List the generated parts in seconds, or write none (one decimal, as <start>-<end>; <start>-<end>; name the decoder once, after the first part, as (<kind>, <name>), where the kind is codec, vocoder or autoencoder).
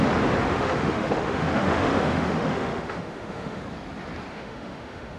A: 0.5-3.6 (autoencoder, DAC-VAE); 4.3-5.2